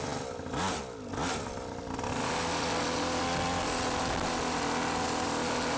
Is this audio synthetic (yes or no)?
no